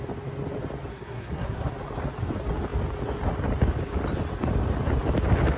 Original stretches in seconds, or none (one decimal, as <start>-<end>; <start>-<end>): 0.0-0.9; 1.7-5.6